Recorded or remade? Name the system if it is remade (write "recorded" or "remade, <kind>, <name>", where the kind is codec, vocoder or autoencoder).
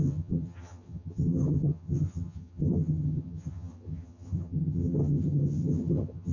remade, vocoder, HiFi-GAN